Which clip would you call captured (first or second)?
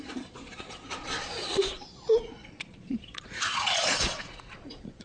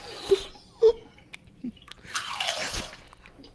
second